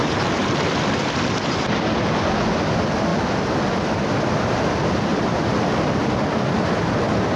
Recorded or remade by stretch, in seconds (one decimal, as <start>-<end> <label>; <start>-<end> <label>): 0.0-5.1 recorded; 5.1-6.1 remade; 6.1-7.4 recorded